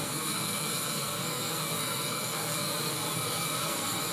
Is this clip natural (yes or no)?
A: no